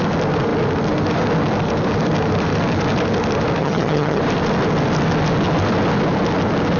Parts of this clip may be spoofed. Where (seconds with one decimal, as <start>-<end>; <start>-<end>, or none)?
3.6-4.2